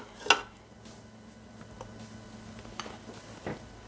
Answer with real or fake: real